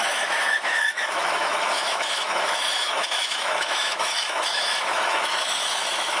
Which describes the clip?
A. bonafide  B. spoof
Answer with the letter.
B